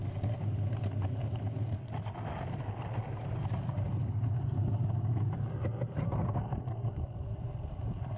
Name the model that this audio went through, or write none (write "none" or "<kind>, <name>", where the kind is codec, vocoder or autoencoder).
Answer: none